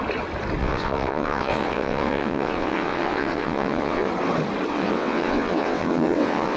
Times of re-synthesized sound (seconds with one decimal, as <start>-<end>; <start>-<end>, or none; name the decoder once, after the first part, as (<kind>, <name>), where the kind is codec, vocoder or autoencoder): 0.6-4.1 (vocoder, WaveNeXt); 4.7-6.6